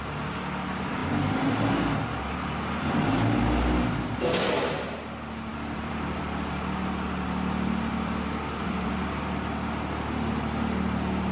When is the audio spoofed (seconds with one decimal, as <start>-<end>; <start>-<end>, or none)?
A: 5.5-6.2; 7.9-8.9